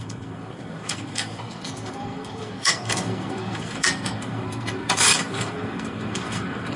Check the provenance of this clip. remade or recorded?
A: remade